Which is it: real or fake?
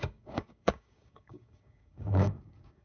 fake